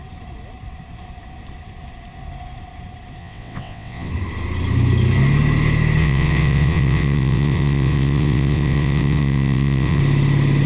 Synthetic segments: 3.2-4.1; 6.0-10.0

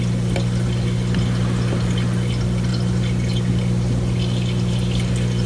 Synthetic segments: none

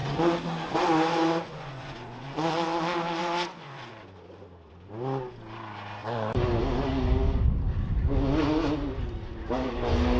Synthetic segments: 0.0-2.5; 3.2-3.9

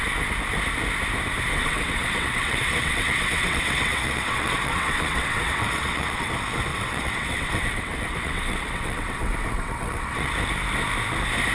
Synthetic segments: 1.5-6.3; 6.7-10.3

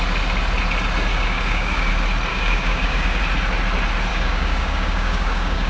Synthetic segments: 1.1-1.9; 2.3-3.2; 4.1-5.7

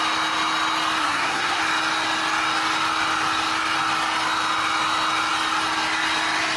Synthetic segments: 1.0-1.6

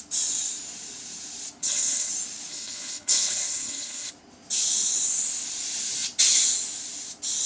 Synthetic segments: 1.6-2.1; 2.5-4.1

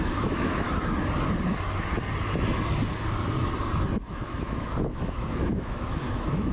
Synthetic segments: 0.0-0.7; 4.0-6.5